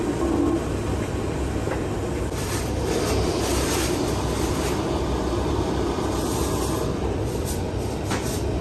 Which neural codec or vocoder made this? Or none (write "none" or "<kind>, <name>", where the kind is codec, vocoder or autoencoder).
none